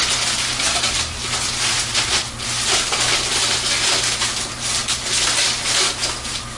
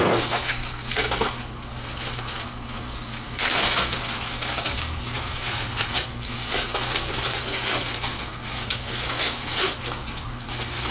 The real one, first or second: first